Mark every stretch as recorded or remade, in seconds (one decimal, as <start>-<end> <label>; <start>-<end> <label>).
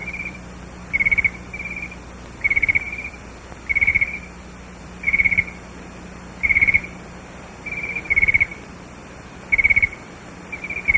0.0-3.4 remade; 3.4-8.5 recorded; 8.5-10.1 remade; 10.1-11.0 recorded